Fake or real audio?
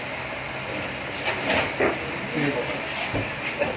real